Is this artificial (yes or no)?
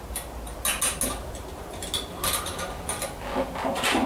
no